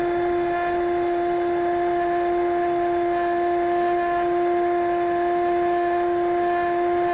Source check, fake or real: real